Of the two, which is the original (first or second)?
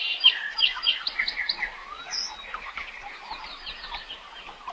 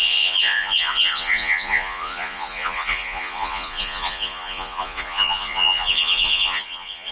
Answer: first